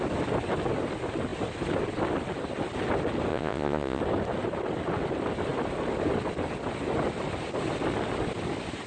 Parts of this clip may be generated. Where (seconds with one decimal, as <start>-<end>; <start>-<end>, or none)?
3.3-4.0